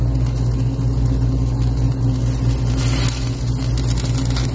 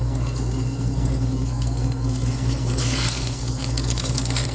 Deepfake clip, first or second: second